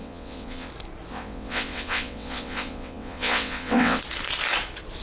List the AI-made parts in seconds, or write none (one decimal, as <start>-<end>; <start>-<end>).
0.0-0.7; 1.1-4.0